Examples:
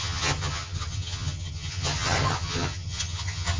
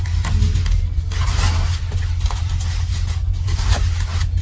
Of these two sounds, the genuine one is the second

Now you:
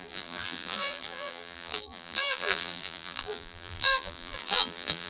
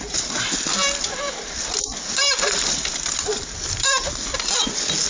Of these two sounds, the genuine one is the second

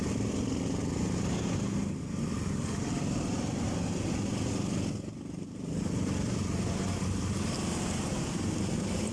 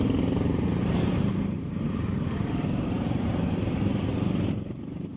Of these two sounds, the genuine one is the first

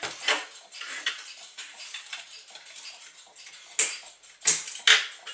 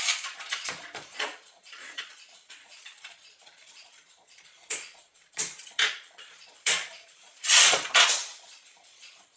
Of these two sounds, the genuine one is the first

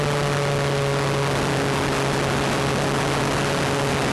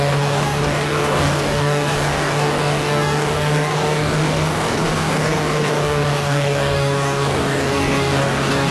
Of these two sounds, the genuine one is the first